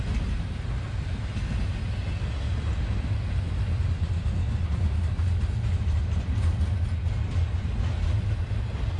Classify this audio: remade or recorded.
recorded